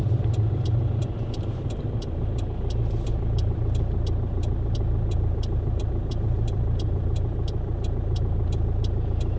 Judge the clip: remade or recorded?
remade